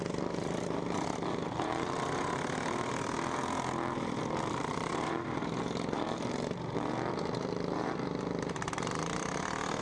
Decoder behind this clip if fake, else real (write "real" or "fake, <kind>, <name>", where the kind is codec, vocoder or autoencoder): fake, vocoder, BigVGAN v2